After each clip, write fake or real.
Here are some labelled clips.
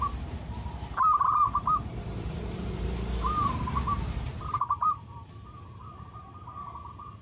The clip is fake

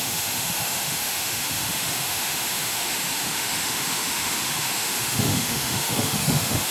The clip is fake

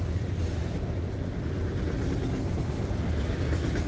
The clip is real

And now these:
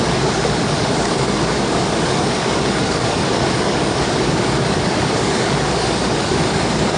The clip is fake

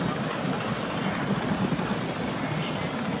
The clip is real